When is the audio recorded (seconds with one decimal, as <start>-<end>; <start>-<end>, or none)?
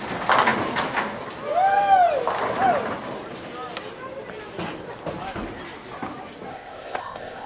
0.0-6.5